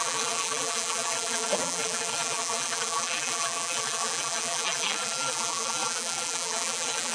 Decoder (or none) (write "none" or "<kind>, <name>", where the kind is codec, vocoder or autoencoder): vocoder, BigVGAN v2